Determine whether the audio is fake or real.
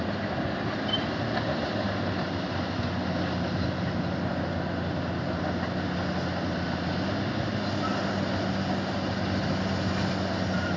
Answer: real